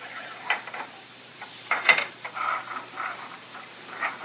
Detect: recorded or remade remade